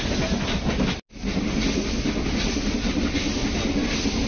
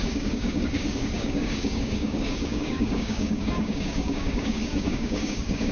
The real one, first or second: first